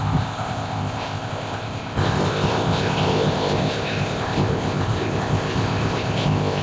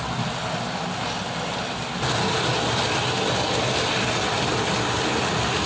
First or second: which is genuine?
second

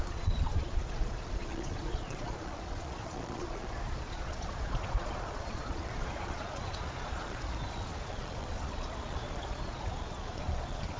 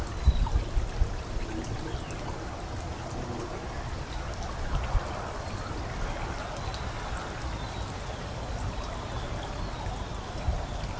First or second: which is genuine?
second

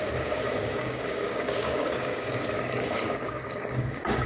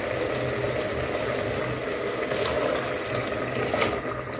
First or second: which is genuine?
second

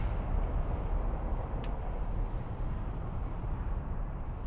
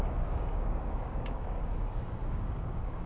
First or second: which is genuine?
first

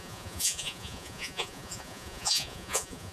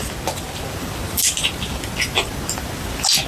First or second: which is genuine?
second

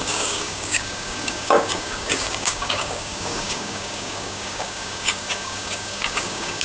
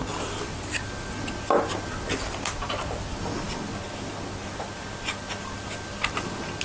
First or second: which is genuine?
second